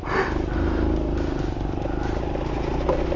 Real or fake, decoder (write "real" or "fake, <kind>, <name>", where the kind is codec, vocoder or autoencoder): real